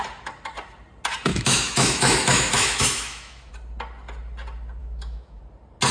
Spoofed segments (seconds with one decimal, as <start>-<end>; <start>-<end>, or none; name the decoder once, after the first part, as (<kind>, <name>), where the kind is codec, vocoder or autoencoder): 1.3-3.5 (autoencoder, DAC-VAE); 4.8-5.4